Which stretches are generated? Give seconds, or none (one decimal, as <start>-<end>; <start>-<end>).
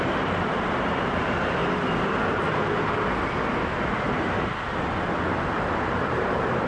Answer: 0.0-1.6; 5.6-6.7